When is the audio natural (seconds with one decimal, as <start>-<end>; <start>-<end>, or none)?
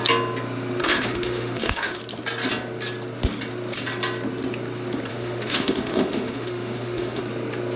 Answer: 0.0-0.8; 2.0-5.1; 7.2-7.8